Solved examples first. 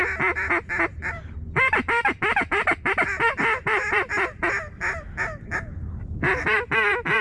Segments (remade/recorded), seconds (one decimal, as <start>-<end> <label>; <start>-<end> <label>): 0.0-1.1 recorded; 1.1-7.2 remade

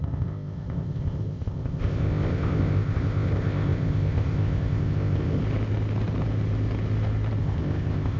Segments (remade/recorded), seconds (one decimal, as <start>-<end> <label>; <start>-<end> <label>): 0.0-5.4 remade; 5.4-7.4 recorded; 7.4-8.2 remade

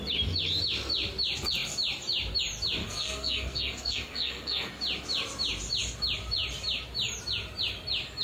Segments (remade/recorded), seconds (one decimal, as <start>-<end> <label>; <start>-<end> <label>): 0.0-2.8 recorded; 2.8-4.7 remade; 4.7-8.2 recorded

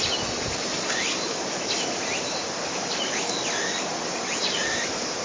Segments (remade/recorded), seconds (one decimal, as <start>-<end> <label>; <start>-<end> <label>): 0.0-5.2 recorded

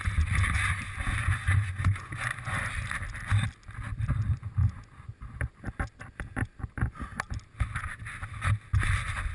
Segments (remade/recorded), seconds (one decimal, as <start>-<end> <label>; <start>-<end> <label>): 0.0-1.2 recorded; 1.2-2.6 remade; 2.6-9.3 recorded

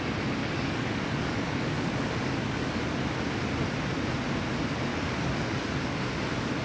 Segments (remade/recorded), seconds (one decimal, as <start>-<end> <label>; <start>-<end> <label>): 0.0-0.4 recorded; 0.4-2.8 remade; 2.8-4.9 recorded; 4.9-5.8 remade; 5.8-6.6 recorded